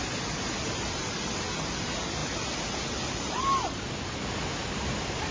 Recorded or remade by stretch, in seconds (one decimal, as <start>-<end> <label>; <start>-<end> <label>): 0.0-5.3 recorded